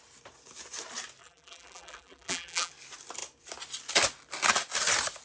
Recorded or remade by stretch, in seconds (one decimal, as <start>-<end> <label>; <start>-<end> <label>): 0.0-1.2 recorded; 1.2-2.7 remade; 2.7-5.2 recorded